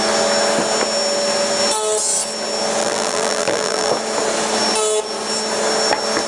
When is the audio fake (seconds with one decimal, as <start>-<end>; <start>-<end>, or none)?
2.8-3.9

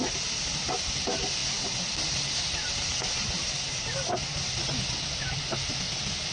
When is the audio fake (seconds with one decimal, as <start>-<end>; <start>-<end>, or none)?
none